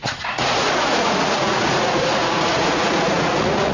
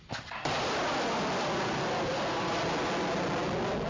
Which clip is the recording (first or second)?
second